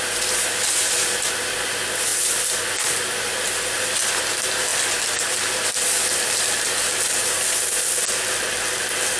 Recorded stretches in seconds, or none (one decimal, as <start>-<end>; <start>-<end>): 0.0-9.2